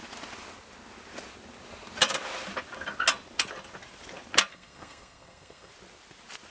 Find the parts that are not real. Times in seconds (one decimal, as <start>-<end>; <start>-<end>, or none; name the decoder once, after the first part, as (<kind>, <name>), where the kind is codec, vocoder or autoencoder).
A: 4.5-5.7 (codec, SNAC)